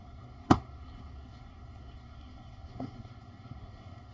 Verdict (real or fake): fake